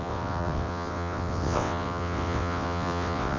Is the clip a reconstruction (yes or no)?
yes